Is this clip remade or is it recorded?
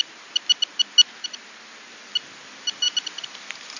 recorded